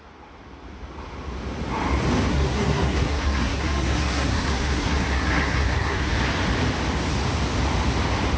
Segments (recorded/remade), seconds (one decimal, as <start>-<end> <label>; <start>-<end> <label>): 0.0-2.3 recorded; 2.3-6.1 remade; 6.1-8.4 recorded